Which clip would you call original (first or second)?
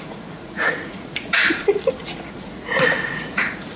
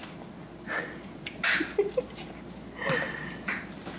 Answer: second